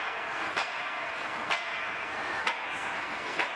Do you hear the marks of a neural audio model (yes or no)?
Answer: yes